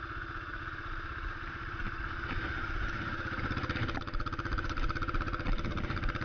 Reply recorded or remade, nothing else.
remade